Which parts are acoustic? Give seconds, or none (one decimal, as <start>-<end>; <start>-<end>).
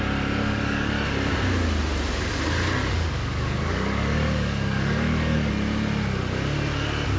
0.0-0.4; 0.9-2.8; 5.5-7.2